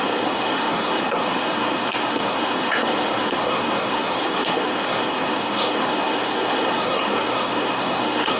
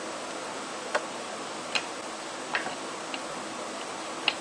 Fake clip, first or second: first